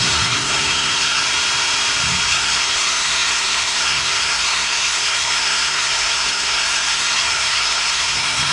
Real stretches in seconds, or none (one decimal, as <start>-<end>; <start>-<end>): 1.2-2.3